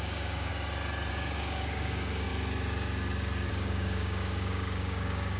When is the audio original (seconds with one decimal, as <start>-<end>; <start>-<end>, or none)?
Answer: 0.5-1.1; 2.3-3.5